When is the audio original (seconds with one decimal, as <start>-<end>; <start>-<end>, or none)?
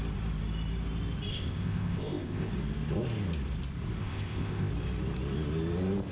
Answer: 0.0-1.3; 2.5-4.0; 4.7-6.1